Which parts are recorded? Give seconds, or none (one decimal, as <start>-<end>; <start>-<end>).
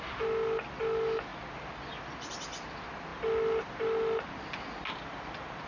0.0-5.7